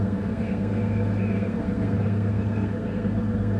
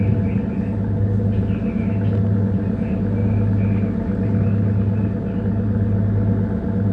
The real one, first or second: second